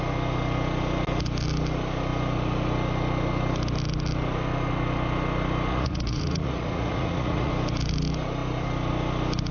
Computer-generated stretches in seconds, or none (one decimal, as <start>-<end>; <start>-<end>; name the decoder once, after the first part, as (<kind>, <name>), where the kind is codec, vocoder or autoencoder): 5.7-7.5 (vocoder, Vocos)